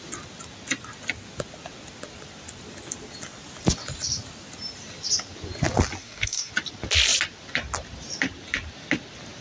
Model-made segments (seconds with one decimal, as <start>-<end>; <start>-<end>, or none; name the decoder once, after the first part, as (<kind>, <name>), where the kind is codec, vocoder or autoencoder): 6.0-6.5 (codec, DAC)

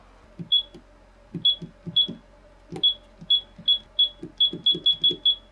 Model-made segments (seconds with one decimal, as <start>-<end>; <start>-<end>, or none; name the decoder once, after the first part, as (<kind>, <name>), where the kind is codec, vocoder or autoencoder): none

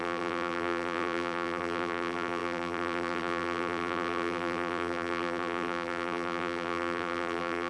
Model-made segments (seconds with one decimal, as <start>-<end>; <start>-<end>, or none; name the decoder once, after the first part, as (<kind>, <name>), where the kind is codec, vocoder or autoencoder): 0.0-7.7 (vocoder, BigVGAN v2)

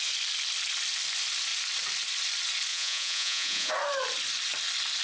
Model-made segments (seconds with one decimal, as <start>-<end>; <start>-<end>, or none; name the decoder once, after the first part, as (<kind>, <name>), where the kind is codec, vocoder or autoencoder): 2.7-3.7 (vocoder, Vocos)

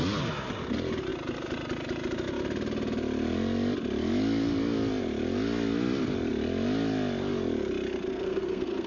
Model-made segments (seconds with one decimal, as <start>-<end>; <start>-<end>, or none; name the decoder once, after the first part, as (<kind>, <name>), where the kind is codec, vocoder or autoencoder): 8.1-8.9 (codec, SNAC)

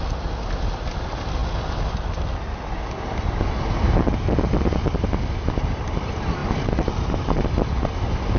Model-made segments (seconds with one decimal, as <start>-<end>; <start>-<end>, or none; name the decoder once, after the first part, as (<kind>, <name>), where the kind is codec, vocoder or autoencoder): none

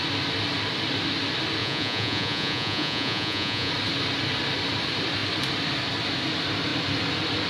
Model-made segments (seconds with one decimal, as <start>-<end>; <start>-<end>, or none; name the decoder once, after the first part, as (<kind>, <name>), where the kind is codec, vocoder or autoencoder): 1.6-3.7 (vocoder, Vocos)